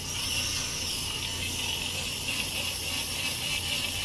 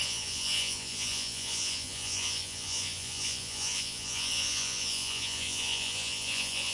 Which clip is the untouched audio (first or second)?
first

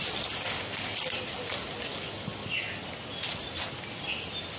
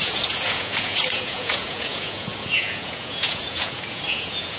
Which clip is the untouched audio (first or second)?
first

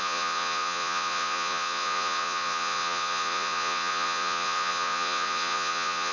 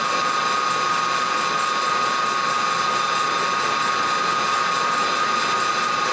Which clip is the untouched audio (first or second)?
second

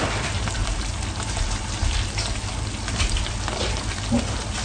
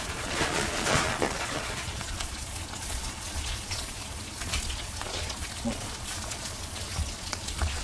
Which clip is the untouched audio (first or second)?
first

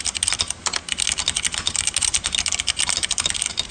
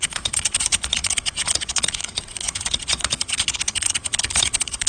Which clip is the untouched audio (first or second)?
first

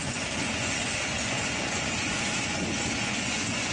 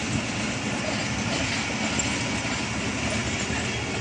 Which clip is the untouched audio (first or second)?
second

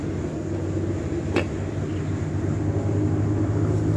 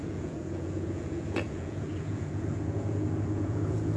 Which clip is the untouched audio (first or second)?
first